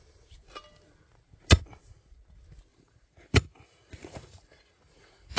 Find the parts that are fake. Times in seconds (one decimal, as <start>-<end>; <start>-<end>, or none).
2.7-5.4